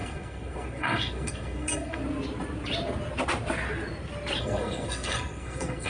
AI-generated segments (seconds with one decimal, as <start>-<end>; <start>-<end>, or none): 0.0-2.0; 4.4-5.9